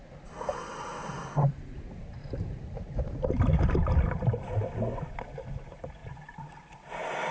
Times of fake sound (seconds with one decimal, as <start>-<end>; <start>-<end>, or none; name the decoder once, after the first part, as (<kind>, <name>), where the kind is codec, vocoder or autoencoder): 0.9-4.4 (vocoder, BigVGAN v2); 6.0-7.3